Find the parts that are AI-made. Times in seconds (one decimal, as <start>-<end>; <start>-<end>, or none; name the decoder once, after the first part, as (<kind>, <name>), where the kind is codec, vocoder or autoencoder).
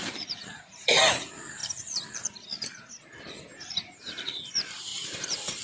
0.4-1.0 (vocoder, BigVGAN v2); 4.9-5.6